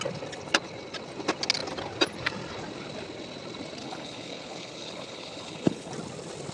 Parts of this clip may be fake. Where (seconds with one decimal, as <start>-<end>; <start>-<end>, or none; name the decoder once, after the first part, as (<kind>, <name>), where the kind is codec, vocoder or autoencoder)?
3.8-5.9 (codec, HILCodec)

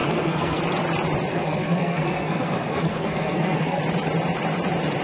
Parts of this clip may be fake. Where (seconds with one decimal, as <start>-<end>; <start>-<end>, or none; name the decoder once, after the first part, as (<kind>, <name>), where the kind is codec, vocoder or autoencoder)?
0.0-0.6 (codec, SNAC); 1.3-3.8

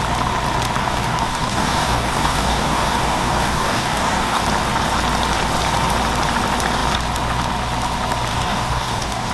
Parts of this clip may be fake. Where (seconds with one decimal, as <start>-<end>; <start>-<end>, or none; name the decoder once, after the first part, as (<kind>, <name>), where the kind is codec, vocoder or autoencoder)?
0.8-4.4 (codec, DAC); 8.3-9.3

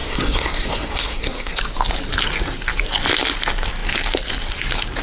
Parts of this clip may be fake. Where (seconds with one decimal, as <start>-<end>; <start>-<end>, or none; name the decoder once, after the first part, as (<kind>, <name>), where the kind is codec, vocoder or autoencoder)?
0.0-1.6 (codec, SNAC)

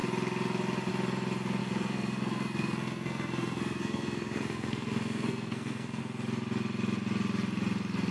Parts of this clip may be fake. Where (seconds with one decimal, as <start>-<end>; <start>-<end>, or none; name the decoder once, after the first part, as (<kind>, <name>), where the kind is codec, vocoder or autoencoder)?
1.6-6.0 (codec, SNAC)

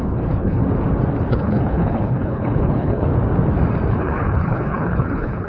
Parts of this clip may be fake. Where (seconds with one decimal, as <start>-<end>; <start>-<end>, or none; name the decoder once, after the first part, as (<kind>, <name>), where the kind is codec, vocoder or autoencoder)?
0.0-0.6 (codec, HILCodec); 1.3-3.1; 3.9-5.5

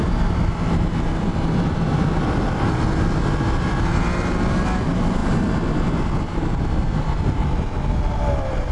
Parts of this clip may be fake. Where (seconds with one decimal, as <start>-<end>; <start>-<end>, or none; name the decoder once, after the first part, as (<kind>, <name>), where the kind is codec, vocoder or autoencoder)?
none